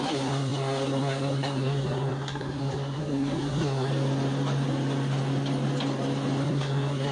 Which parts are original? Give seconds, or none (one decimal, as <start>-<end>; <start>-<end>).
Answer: 3.9-6.4